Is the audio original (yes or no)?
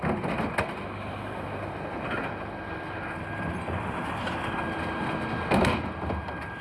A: yes